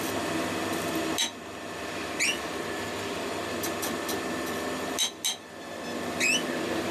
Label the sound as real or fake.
real